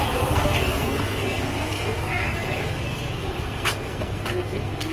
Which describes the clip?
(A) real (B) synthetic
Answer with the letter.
B